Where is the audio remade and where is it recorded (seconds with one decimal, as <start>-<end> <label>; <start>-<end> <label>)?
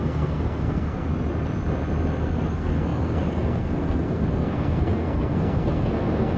0.0-1.1 remade; 1.1-2.2 recorded; 2.2-6.4 remade